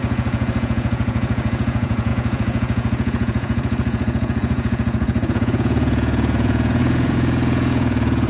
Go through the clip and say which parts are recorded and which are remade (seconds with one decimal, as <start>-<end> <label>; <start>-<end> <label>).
0.0-8.3 remade